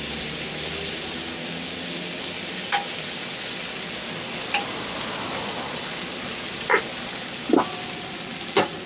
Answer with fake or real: real